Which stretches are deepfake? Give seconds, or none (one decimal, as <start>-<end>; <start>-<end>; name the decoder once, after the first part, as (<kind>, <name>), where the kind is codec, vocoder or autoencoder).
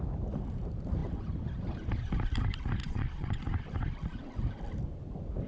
2.8-3.4 (vocoder, Vocos)